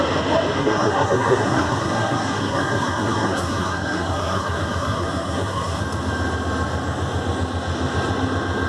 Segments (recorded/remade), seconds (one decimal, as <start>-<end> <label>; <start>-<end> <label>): 0.0-0.6 recorded; 0.6-5.8 remade; 5.8-8.7 recorded